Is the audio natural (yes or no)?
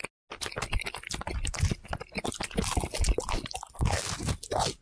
yes